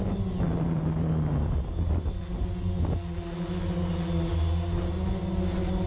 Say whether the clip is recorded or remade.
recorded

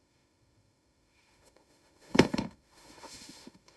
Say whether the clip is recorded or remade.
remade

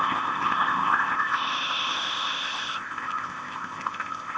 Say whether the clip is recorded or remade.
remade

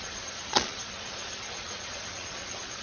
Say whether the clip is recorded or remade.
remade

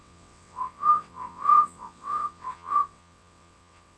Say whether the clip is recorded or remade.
remade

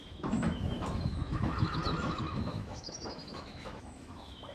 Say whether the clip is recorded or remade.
remade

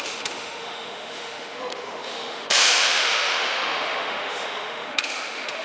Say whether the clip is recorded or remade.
remade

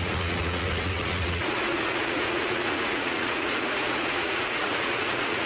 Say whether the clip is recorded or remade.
remade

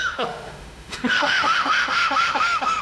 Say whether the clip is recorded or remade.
remade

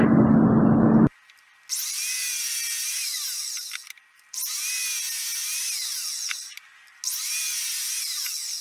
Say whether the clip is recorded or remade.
recorded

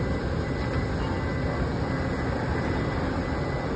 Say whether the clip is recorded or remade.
recorded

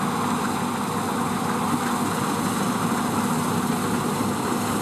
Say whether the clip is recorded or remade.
recorded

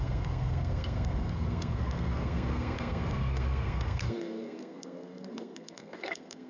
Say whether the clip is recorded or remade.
remade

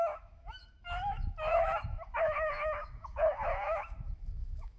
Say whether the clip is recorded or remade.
remade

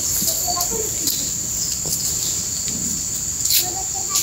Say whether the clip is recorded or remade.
recorded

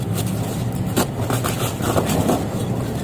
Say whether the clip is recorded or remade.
recorded